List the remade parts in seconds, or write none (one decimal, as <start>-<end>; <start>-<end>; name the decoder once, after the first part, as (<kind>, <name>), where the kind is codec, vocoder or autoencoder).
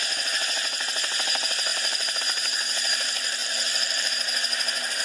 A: 1.7-2.2 (vocoder, BigVGAN v2); 3.4-4.1